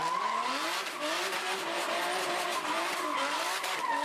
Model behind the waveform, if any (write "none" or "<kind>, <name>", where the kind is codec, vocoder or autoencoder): none